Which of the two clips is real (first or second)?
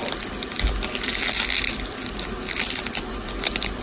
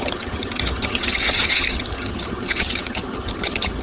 first